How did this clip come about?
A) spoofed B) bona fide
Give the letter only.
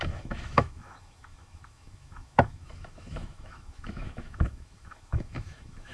A